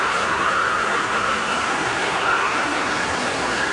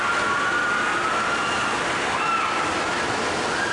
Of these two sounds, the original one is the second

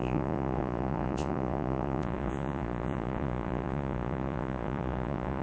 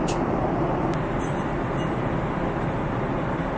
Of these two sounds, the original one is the second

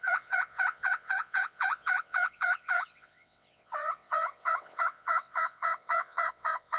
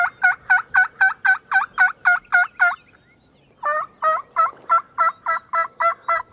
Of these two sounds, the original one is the second